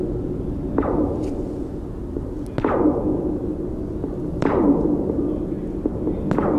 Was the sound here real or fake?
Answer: real